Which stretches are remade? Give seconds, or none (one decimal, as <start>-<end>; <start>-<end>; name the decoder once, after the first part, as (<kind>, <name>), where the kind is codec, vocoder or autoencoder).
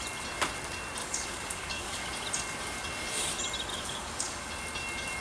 1.0-2.1 (codec, DAC); 3.7-4.5